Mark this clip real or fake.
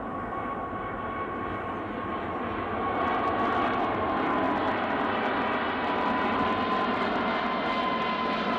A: real